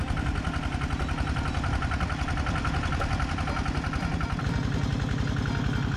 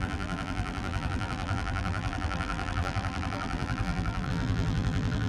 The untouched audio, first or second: first